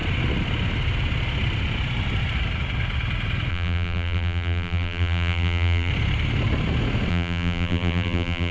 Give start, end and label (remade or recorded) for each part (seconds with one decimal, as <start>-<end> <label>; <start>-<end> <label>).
0.0-3.5 recorded; 3.5-5.9 remade; 5.9-7.1 recorded; 7.1-8.5 remade